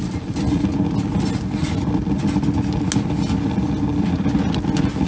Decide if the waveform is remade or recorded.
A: recorded